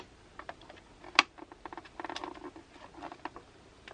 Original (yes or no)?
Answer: yes